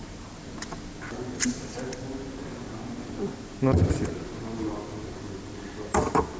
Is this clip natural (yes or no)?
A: yes